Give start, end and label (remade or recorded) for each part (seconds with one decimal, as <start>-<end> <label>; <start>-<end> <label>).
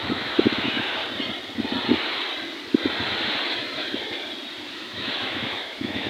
0.0-1.0 remade; 1.0-4.7 recorded; 4.7-6.1 remade